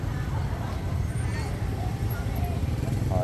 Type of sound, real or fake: real